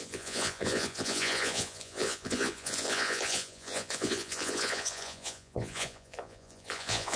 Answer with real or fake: fake